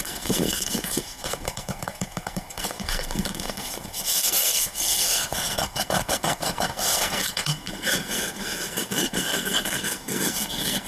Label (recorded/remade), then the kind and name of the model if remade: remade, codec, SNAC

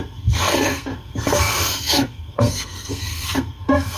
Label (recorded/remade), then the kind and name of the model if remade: remade, codec, SNAC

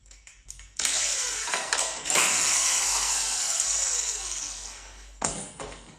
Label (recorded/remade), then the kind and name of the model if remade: remade, codec, SNAC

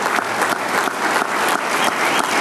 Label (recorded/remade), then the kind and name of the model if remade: recorded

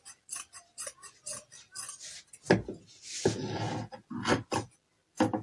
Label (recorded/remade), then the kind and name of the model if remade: recorded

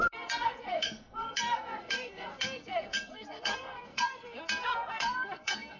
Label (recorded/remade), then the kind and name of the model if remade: remade, codec, SNAC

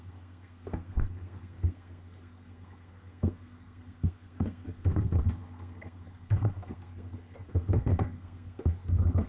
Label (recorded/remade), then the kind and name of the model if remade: remade, codec, SNAC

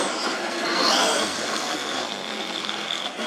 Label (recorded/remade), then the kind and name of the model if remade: remade, codec, SNAC